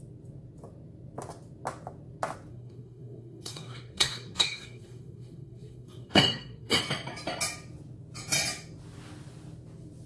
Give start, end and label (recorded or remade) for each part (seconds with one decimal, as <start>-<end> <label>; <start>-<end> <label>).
0.0-2.5 recorded; 2.5-6.8 remade; 6.8-10.1 recorded